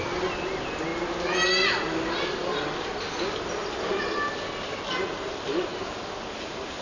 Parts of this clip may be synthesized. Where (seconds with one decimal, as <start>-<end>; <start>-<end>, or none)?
none